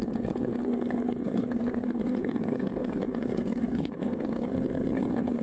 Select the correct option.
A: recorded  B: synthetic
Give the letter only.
B